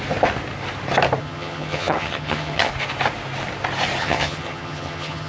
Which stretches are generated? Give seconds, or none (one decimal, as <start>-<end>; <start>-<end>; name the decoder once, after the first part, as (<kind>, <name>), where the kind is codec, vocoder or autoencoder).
1.2-2.7 (vocoder, HiFi-GAN); 4.0-5.3